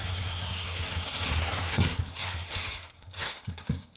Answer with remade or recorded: remade